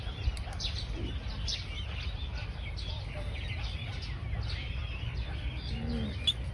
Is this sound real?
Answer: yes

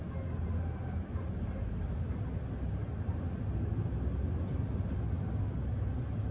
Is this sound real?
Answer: yes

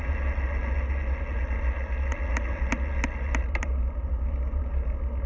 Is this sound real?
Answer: yes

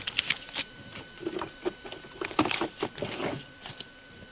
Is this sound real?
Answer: yes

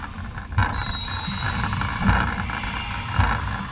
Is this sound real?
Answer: yes